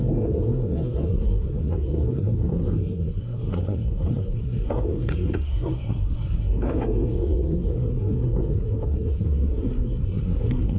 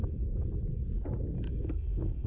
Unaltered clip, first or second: second